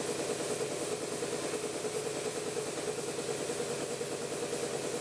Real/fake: real